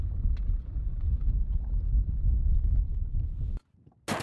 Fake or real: real